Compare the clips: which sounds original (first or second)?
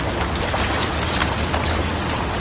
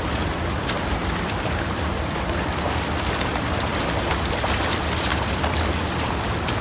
first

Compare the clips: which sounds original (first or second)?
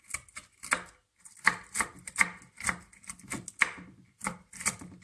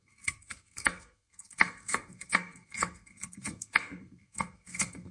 first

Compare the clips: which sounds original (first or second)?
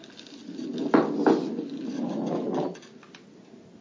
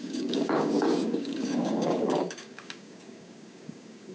first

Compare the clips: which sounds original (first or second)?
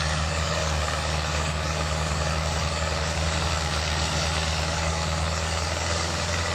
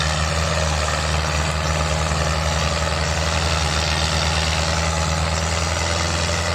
second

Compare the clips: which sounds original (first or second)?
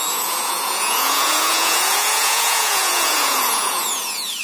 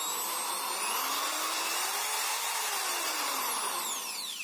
second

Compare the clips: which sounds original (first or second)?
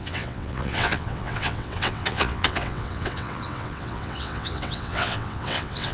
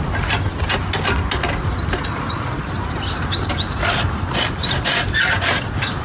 second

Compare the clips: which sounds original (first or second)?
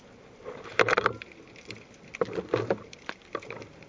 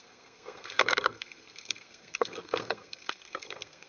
first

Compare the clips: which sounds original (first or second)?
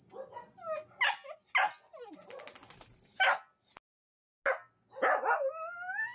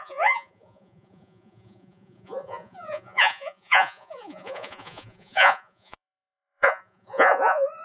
first